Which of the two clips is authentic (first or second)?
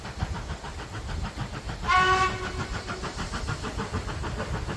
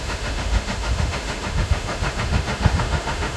first